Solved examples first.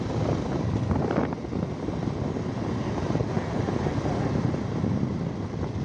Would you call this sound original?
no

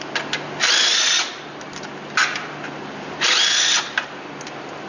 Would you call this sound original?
yes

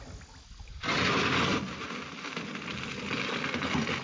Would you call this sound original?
yes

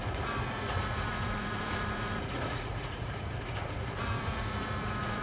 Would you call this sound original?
no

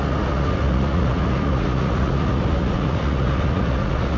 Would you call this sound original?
no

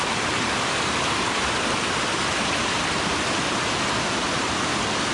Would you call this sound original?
yes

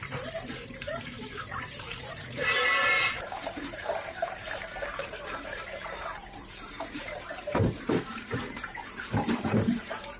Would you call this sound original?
no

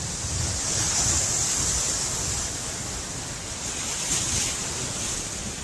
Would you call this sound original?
yes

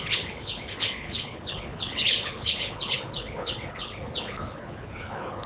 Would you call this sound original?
no